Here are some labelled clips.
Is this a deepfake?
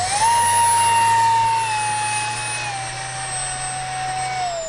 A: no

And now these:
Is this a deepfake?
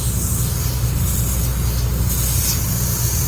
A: no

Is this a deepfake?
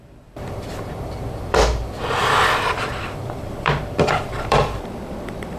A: yes